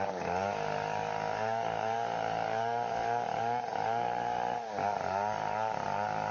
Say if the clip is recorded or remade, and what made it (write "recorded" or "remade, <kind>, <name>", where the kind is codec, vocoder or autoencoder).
remade, codec, DAC